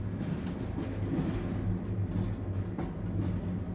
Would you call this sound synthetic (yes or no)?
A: no